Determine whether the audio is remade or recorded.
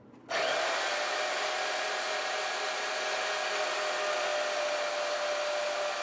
recorded